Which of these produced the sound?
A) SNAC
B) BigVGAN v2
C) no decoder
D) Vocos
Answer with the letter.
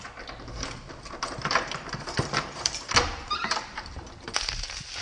B